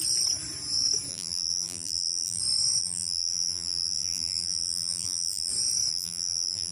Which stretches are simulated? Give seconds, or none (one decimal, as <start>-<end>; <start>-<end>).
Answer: 1.1-2.4; 2.8-5.5; 5.9-6.7